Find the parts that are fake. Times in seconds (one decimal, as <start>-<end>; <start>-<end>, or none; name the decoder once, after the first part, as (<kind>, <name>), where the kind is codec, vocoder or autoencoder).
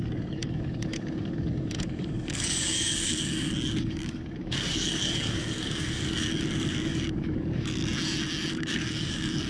0.0-7.8 (codec, DAC); 8.5-9.5